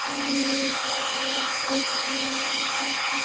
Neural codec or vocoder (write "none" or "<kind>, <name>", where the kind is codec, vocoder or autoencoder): codec, HILCodec